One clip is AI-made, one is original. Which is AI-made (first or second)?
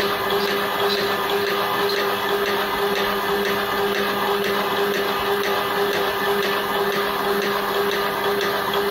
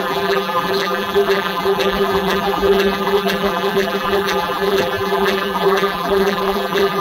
second